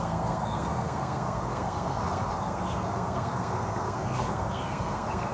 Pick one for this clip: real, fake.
fake